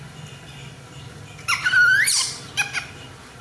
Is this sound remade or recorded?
recorded